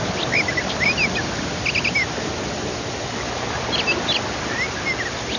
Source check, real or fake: real